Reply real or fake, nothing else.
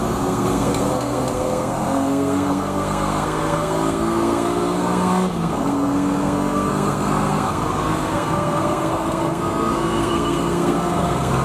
fake